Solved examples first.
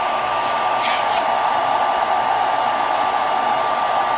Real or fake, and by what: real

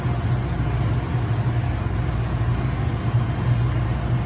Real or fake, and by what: real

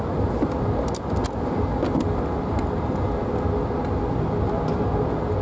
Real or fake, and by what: real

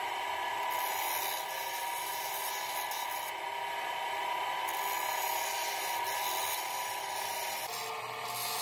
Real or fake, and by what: real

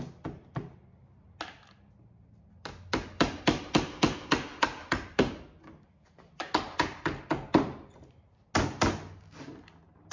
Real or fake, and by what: real